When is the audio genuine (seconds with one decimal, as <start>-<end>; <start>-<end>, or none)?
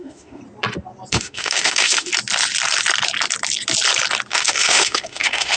0.4-1.1; 2.1-4.3